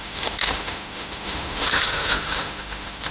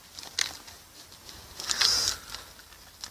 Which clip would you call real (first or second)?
second